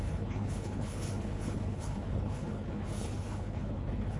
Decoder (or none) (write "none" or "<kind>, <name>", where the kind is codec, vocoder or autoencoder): codec, HILCodec